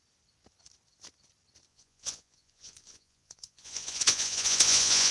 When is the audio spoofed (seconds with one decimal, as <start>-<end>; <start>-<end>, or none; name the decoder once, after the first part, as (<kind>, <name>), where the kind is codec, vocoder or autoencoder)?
1.7-5.1 (vocoder, Vocos)